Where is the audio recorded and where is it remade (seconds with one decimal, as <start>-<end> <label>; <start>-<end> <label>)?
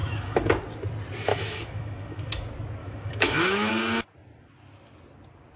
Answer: 0.0-0.5 remade; 0.5-1.3 recorded; 1.3-2.4 remade; 2.4-2.8 recorded; 2.8-3.7 remade; 3.7-5.6 recorded